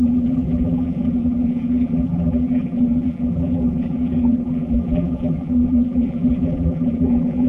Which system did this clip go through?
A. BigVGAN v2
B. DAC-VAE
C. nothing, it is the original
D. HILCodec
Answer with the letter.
A